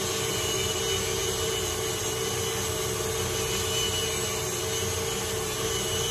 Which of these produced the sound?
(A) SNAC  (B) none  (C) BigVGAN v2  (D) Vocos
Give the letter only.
B